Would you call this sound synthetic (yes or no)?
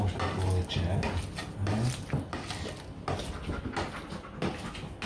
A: no